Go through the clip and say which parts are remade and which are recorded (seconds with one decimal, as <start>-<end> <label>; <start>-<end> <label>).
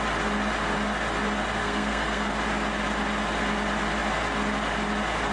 0.0-1.6 recorded; 1.6-2.3 remade; 2.3-5.3 recorded